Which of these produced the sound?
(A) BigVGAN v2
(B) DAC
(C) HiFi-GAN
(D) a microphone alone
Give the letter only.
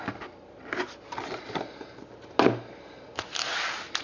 D